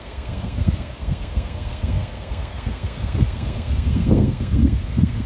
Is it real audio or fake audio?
fake